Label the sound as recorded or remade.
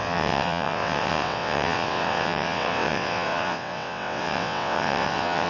remade